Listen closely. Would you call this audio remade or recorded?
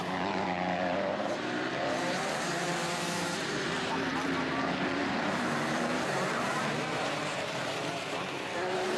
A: remade